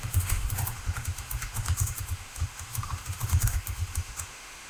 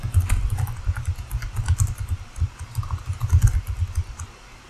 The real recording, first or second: second